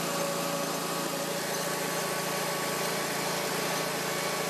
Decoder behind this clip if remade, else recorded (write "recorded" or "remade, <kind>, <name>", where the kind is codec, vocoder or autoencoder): recorded